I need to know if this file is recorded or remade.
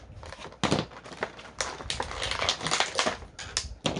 recorded